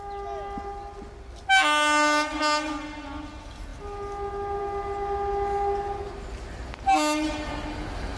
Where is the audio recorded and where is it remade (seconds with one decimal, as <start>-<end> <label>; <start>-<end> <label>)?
0.0-8.2 recorded